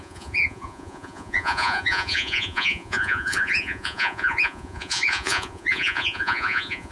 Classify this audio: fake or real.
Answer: fake